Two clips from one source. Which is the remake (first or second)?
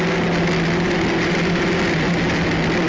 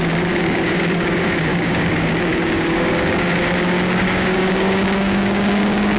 second